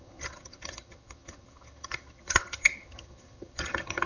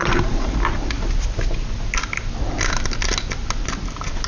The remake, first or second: first